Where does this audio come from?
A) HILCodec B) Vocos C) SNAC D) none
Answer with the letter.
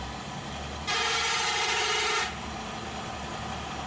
D